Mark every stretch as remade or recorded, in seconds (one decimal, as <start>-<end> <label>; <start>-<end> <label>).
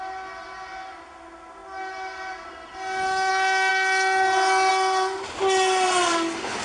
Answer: 0.0-6.6 recorded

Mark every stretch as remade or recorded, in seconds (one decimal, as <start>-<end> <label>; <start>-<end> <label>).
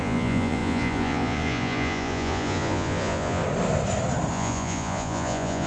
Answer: 0.0-3.4 remade; 3.4-4.3 recorded; 4.3-5.7 remade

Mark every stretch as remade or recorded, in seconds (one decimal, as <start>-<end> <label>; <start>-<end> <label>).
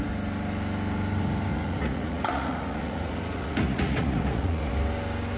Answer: 0.0-1.5 recorded; 1.5-4.7 remade; 4.7-5.4 recorded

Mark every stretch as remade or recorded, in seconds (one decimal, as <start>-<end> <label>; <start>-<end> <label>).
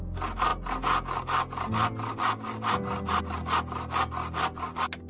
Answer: 0.0-5.1 recorded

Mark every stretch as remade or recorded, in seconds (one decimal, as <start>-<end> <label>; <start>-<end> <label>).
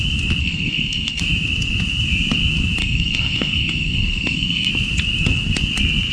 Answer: 0.0-0.4 recorded; 0.4-1.2 remade; 1.2-2.8 recorded; 2.8-4.7 remade; 4.7-6.1 recorded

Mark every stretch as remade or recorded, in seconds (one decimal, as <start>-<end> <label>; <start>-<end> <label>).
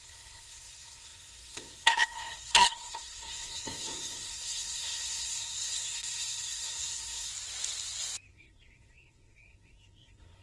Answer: 0.0-7.3 remade; 7.3-8.3 recorded; 8.3-10.4 remade